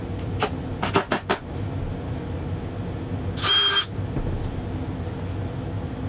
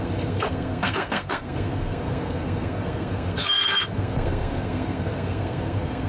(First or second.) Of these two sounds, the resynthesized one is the second